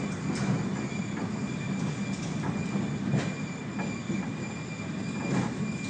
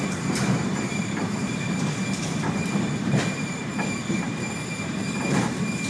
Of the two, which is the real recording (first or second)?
first